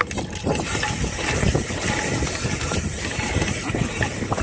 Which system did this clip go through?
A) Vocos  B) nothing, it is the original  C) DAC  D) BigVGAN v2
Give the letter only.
B